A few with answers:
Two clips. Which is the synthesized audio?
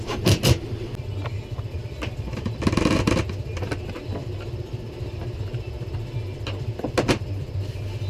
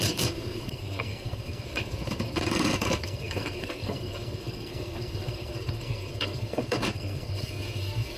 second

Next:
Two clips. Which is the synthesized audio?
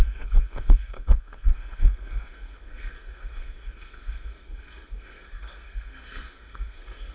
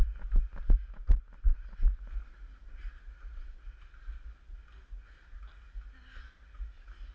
first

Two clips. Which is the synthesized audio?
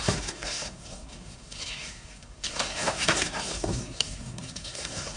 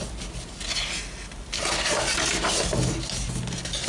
first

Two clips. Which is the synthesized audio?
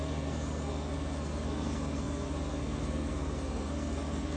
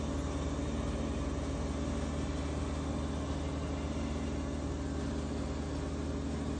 first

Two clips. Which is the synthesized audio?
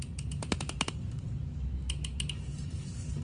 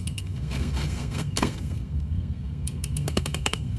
second